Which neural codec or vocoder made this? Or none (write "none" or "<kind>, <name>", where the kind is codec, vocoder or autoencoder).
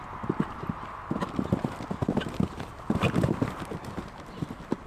none